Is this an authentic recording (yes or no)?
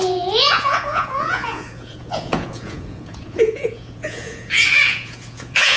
no